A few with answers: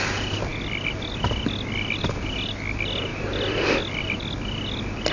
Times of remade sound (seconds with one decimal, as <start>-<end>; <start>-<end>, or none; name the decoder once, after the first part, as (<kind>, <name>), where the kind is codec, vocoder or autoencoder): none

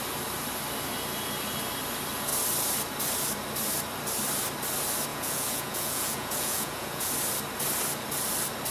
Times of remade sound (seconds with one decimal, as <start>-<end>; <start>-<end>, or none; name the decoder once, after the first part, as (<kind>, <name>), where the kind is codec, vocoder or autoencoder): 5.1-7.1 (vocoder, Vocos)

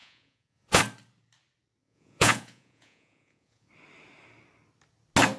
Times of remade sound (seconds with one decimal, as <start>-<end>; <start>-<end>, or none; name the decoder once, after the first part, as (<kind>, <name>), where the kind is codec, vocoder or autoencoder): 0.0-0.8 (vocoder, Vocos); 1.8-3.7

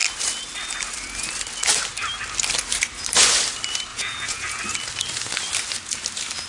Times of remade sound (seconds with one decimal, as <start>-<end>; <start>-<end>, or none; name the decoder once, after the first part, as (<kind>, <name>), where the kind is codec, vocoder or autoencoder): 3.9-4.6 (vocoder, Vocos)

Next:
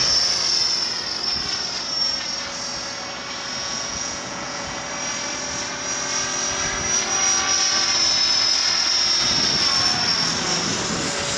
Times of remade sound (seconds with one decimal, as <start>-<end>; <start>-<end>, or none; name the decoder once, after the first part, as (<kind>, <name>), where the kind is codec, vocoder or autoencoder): 3.6-4.8 (vocoder, Vocos)

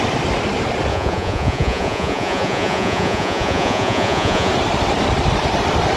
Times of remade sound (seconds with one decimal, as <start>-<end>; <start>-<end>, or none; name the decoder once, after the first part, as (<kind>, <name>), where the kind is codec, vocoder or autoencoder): 0.9-4.5 (vocoder, Vocos)

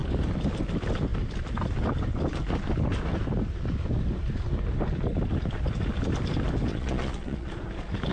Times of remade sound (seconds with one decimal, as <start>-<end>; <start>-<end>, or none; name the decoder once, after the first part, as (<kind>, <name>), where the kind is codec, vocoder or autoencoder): 6.7-7.5 (vocoder, Vocos)